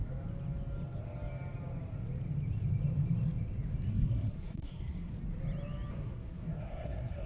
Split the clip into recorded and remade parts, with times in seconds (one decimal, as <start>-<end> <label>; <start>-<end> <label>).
0.0-3.9 recorded; 3.9-5.1 remade; 5.1-5.9 recorded; 5.9-7.3 remade